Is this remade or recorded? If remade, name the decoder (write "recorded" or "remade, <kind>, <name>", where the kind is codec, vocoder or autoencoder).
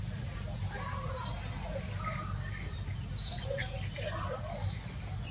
recorded